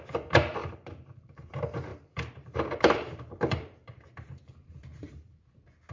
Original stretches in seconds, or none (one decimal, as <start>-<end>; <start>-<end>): 0.0-0.6; 1.5-1.9; 5.4-5.9